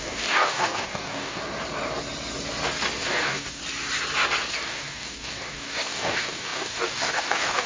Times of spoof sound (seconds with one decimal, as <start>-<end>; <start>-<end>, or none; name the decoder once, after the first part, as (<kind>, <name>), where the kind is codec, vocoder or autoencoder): 0.0-1.4 (codec, DAC); 3.0-3.6; 4.5-7.7

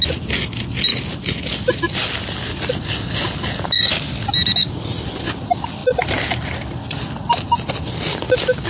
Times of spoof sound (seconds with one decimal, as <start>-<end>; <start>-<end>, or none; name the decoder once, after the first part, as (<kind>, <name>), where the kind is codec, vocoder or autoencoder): 8.1-8.7 (codec, DAC)

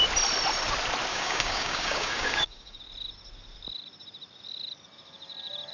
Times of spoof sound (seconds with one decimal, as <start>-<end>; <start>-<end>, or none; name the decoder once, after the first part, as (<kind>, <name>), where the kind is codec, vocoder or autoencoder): 1.1-2.8 (codec, DAC)

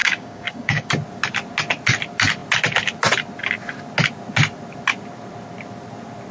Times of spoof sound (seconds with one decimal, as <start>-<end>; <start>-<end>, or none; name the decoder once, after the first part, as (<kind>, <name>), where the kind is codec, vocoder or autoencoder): 0.0-0.9 (codec, DAC)

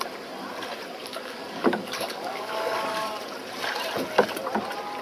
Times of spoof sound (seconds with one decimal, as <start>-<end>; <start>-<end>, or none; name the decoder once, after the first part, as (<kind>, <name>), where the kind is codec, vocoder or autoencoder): 1.0-3.2 (codec, DAC)

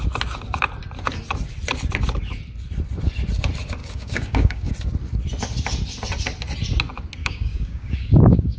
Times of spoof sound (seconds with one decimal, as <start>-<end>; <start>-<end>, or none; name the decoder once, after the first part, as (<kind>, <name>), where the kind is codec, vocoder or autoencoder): 3.8-4.7 (codec, DAC); 7.2-8.6

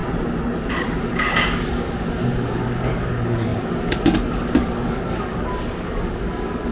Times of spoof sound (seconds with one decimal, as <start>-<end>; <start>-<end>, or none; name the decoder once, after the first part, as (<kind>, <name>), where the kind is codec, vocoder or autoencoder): 0.7-6.7 (codec, DAC)

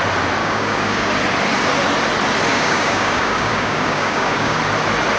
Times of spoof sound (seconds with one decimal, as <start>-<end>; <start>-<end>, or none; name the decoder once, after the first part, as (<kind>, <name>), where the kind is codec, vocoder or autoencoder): 0.4-1.1 (codec, DAC); 2.5-4.6